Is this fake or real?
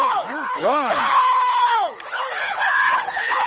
fake